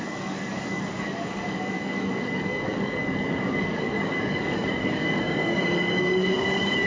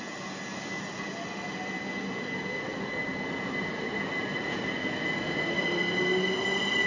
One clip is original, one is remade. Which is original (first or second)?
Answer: second